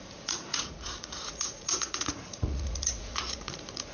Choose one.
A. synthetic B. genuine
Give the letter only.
A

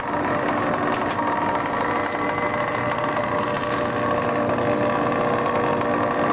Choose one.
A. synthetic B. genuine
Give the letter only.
B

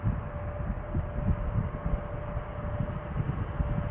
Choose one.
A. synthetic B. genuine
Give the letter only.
B